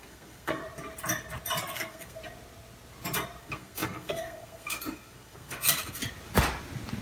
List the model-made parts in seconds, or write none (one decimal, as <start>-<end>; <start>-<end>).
0.0-0.6; 1.6-2.2; 3.4-6.0